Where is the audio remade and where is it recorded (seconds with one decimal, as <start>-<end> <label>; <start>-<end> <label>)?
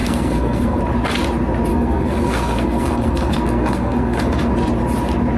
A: 0.0-0.8 remade; 0.8-1.7 recorded; 1.7-4.5 remade; 4.5-5.4 recorded